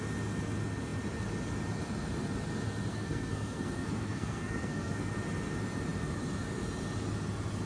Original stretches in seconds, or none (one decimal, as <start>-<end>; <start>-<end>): 0.0-2.9; 5.1-7.7